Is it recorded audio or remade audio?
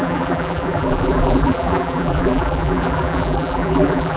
remade